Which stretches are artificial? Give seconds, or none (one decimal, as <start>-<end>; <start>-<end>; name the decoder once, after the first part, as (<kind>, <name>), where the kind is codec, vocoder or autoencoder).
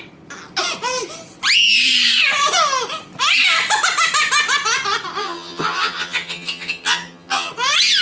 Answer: 5.2-7.5 (vocoder, HiFi-GAN)